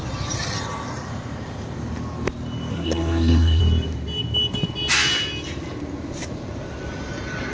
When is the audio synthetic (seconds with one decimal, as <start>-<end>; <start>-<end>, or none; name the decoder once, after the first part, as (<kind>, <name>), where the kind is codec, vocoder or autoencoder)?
2.7-3.6 (codec, SNAC)